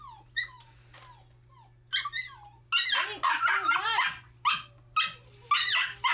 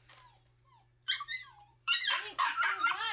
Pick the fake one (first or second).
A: second